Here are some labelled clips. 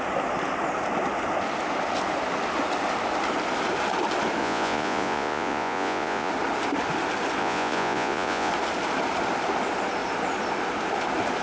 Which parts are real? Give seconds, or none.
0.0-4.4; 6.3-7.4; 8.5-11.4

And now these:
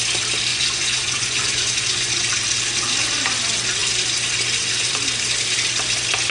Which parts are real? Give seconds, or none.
0.0-0.5; 2.1-6.3

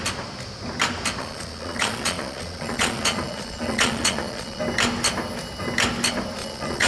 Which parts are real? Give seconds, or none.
0.0-1.2; 4.6-6.4

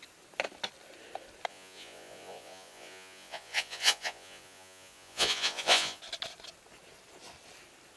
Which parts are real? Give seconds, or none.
0.0-1.5; 6.0-8.0

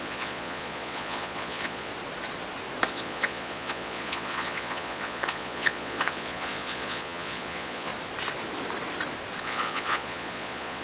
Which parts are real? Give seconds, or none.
1.9-2.9; 7.9-9.4